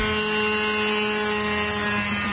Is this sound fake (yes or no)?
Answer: no